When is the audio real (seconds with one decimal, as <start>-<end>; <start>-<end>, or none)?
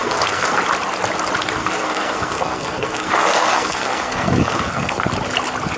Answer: 0.6-1.6; 5.1-5.8